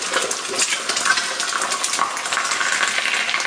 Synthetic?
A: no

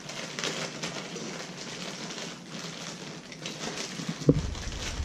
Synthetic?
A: no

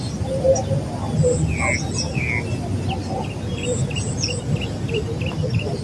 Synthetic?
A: no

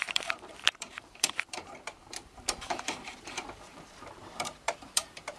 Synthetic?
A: yes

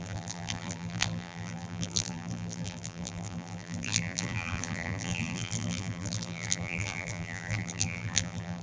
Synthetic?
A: yes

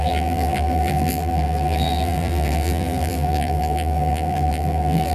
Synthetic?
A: yes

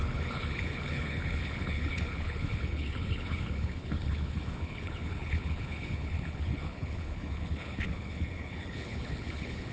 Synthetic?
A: yes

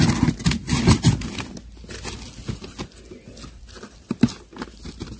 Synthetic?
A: no